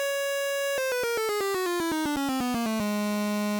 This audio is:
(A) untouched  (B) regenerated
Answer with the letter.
A